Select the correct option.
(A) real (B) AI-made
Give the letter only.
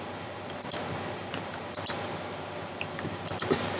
B